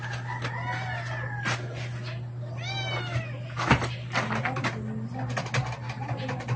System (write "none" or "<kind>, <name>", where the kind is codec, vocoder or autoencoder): none